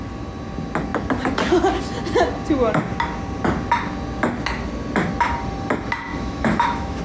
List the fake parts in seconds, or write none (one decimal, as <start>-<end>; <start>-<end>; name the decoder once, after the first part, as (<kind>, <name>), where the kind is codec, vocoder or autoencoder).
6.1-7.0 (autoencoder, DAC-VAE)